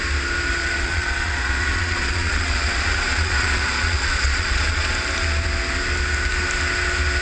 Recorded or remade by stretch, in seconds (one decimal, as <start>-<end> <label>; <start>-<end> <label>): 0.0-0.6 recorded; 0.6-4.9 remade; 4.9-7.2 recorded